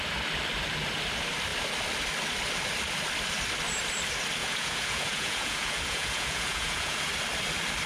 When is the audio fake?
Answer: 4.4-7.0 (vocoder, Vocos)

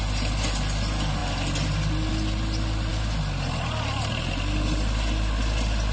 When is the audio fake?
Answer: none

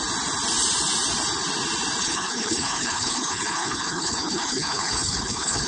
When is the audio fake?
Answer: 2.0-5.7 (codec, HILCodec)

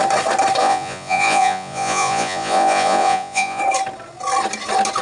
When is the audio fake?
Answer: 0.6-3.6 (vocoder, Vocos)

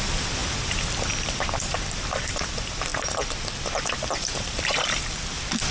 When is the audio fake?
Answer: 0.0-2.9 (vocoder, BigVGAN v2); 4.0-5.7

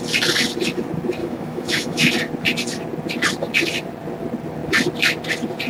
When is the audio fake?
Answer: 1.2-2.1 (autoencoder, DAC-VAE)

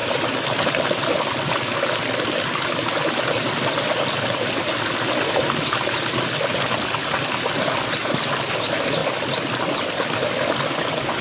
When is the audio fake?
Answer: none